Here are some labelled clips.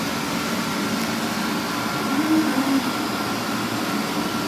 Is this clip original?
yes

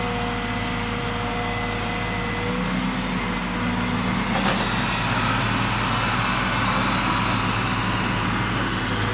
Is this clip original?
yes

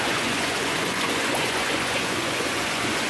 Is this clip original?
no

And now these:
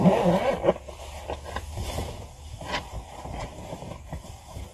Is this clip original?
yes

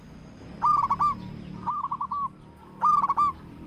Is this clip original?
yes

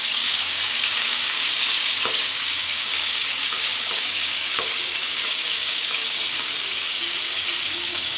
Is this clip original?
no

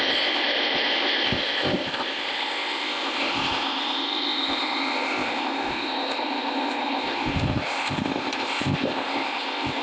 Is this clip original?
no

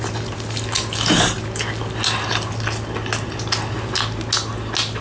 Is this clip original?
yes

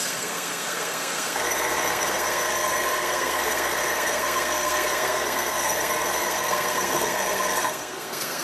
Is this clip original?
no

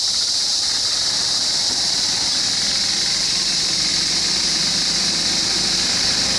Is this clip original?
yes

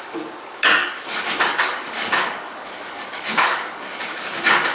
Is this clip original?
no